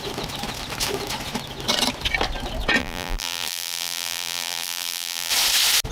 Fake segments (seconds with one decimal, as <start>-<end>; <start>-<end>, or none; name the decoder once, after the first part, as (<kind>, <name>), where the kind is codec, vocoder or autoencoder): 2.8-5.3 (vocoder, BigVGAN v2)